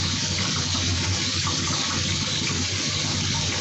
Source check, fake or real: fake